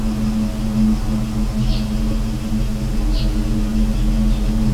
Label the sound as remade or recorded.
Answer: recorded